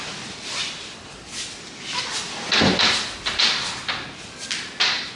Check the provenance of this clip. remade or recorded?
recorded